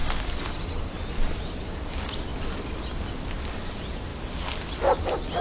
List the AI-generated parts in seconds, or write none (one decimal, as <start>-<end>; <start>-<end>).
none